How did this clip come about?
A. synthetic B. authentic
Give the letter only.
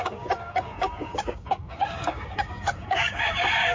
A